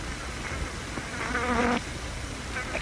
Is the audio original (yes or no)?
yes